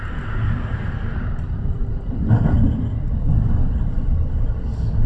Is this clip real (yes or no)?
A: yes